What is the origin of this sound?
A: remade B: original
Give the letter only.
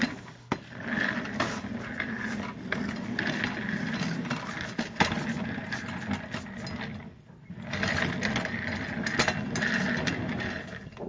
B